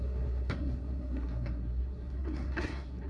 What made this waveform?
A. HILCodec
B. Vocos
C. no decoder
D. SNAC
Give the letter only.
D